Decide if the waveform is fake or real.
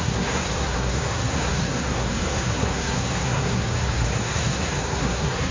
fake